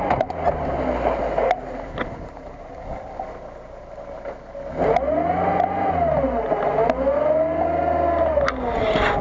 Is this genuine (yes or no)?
yes